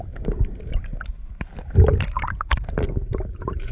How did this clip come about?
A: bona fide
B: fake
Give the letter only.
A